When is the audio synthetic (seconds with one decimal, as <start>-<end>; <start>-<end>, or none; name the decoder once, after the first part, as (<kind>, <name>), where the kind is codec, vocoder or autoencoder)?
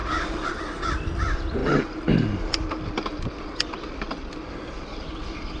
none